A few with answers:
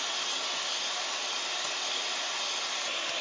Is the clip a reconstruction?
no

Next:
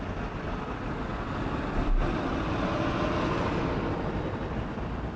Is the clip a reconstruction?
no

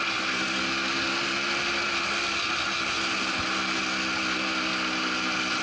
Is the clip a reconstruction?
no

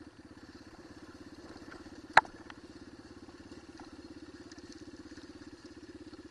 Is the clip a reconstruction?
yes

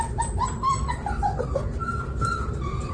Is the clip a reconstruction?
no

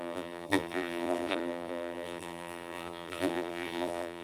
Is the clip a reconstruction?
yes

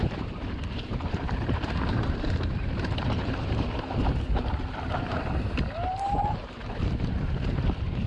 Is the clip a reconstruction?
yes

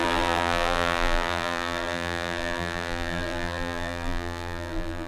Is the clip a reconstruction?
yes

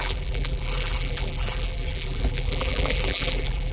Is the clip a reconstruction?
yes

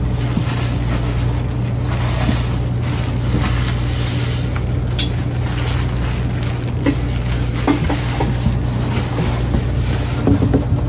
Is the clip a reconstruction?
no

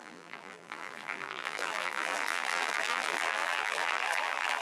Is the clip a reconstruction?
yes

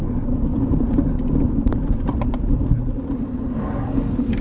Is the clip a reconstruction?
no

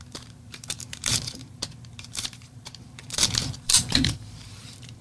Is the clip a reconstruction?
yes